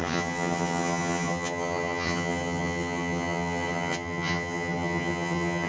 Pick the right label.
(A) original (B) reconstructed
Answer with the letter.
B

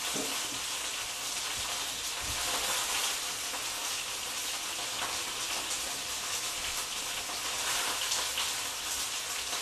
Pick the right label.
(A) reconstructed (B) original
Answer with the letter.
B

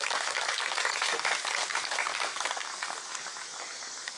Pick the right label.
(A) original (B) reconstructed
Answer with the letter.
B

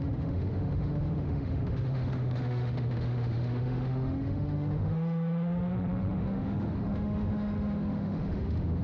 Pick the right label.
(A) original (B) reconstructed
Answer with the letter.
B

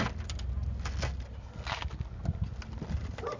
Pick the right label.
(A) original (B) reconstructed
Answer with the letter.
A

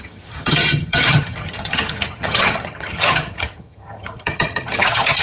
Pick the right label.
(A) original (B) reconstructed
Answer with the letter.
B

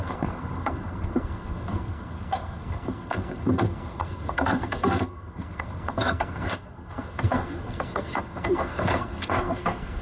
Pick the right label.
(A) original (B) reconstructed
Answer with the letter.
B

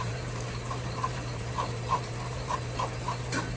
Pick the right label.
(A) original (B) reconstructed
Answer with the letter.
B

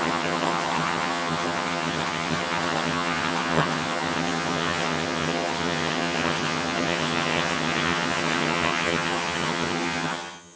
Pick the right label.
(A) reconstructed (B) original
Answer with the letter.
A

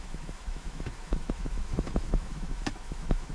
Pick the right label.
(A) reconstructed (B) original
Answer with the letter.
A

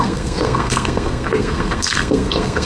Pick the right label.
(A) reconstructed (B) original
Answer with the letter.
A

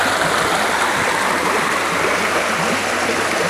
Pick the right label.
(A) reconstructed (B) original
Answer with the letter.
B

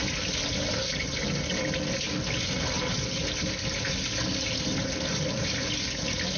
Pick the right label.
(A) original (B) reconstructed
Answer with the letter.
A